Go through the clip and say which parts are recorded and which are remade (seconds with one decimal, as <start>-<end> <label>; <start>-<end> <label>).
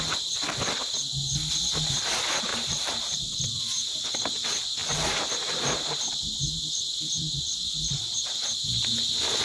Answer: 0.0-2.5 recorded; 2.5-3.2 remade; 3.2-4.8 recorded; 4.8-8.0 remade; 8.0-9.4 recorded